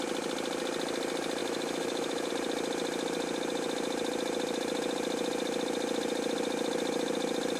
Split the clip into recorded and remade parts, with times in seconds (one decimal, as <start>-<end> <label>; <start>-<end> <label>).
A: 0.0-1.4 recorded; 1.4-2.3 remade; 2.3-7.6 recorded